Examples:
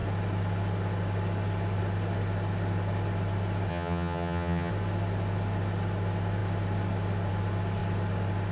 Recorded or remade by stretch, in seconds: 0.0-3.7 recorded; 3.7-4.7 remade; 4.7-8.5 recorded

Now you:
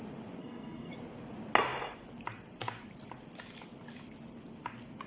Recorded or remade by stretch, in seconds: 0.0-0.4 recorded; 0.4-0.9 remade; 0.9-5.1 recorded

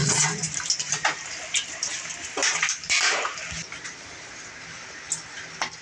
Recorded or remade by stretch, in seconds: 0.0-0.6 remade; 0.6-2.4 recorded; 2.4-4.5 remade; 4.5-5.8 recorded

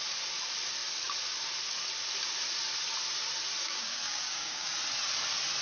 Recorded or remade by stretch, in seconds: 0.0-3.6 recorded; 3.6-4.7 remade; 4.7-5.6 recorded

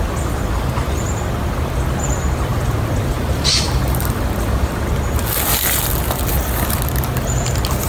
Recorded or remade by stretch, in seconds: 0.0-2.5 recorded; 2.5-4.8 remade; 4.8-7.9 recorded

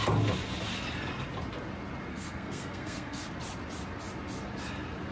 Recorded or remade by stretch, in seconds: 0.0-2.1 recorded; 2.1-3.3 remade; 3.3-5.1 recorded

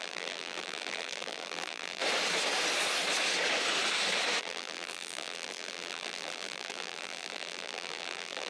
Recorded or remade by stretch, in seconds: 0.0-2.0 remade; 2.0-4.4 recorded; 4.4-8.5 remade

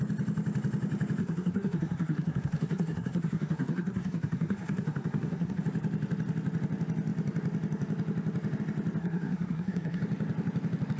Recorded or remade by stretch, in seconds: 0.0-1.2 recorded; 1.2-5.6 remade; 5.6-9.0 recorded; 9.0-10.0 remade; 10.0-11.0 recorded